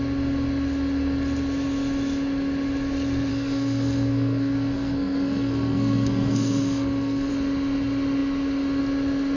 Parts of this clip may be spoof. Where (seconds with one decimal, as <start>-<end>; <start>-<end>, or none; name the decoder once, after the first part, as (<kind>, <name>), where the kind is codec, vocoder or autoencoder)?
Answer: 3.3-7.3 (codec, SNAC)